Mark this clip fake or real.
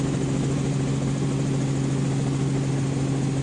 real